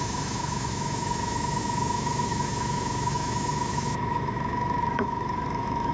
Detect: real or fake fake